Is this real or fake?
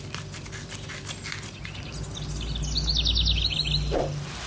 real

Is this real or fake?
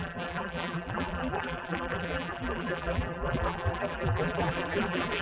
fake